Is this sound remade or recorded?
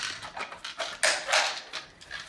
recorded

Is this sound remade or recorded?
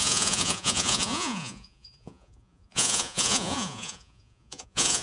remade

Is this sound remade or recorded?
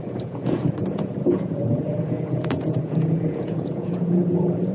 remade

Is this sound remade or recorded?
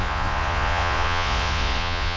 remade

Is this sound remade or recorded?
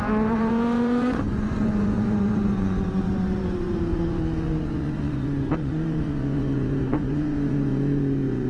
remade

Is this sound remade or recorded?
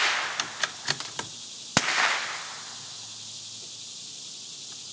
recorded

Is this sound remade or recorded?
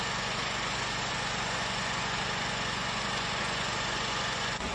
remade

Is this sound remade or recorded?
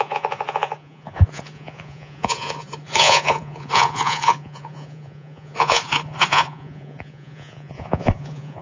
remade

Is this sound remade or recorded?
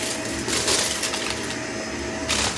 recorded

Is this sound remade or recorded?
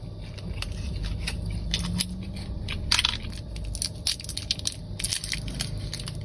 recorded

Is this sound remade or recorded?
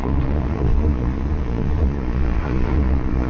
remade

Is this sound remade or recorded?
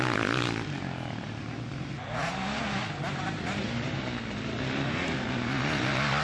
recorded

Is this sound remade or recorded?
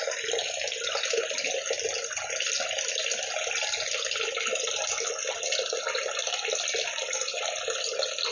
recorded